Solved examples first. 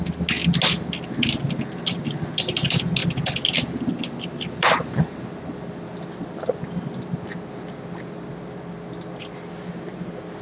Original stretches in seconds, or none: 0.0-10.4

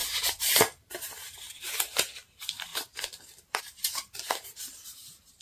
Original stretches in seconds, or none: none

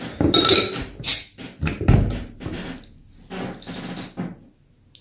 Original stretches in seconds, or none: 0.0-5.0

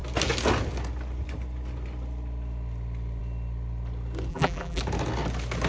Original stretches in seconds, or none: 0.0-4.3; 4.8-5.7